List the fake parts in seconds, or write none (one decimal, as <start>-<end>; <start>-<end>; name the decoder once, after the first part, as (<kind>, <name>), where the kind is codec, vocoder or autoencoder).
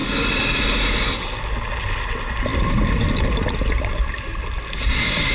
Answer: none